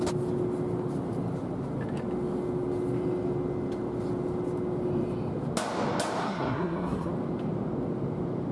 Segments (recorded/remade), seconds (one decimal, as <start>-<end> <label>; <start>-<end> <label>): 0.0-6.2 recorded; 6.2-7.1 remade; 7.1-8.5 recorded